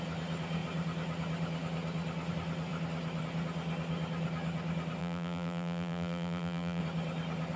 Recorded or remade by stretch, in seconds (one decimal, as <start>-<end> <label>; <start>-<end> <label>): 0.0-5.0 recorded; 5.0-6.8 remade; 6.8-7.6 recorded